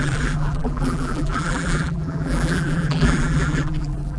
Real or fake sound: fake